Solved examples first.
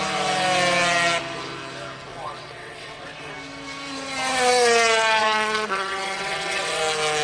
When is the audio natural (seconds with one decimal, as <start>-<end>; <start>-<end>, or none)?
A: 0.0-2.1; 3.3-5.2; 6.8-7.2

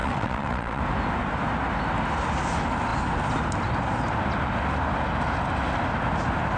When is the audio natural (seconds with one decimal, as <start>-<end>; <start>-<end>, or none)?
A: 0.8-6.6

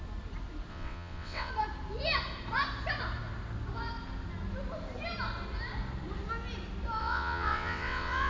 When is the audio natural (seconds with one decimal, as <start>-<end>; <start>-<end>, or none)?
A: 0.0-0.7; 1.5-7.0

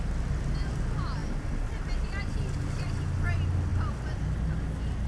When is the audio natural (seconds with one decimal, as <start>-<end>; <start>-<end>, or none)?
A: 0.0-5.1

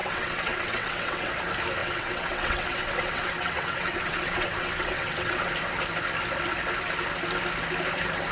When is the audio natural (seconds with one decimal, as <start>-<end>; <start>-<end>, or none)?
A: 1.3-1.8; 5.5-8.3

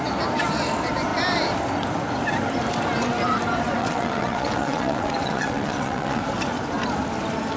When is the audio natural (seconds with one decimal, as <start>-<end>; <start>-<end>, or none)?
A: 0.0-3.8; 6.2-7.6

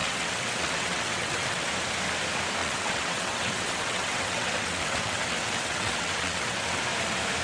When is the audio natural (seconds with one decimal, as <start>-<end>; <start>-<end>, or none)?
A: 1.7-2.6; 6.8-7.4

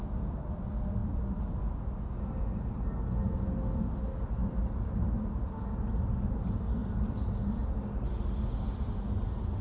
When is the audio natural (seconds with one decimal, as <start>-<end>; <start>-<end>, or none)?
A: 0.0-9.6